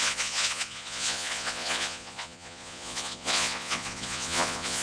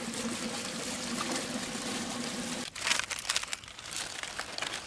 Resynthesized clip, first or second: first